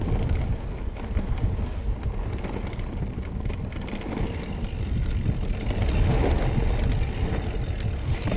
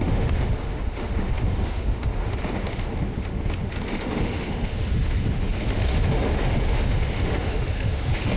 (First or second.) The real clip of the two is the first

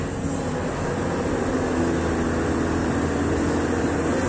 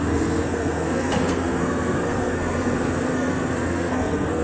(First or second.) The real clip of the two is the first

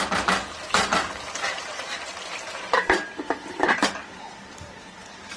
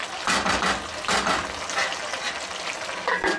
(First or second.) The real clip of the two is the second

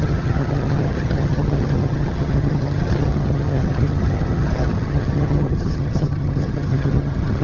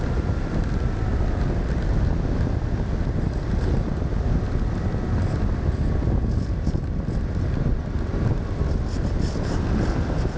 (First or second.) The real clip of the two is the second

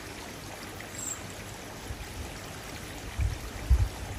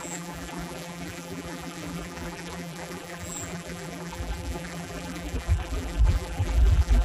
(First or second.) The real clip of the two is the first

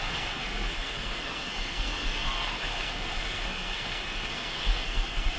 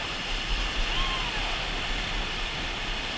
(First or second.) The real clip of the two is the second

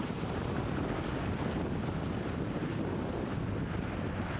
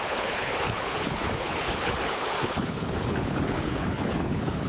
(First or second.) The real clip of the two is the first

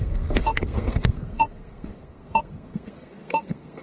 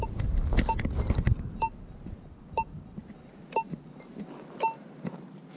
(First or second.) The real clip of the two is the second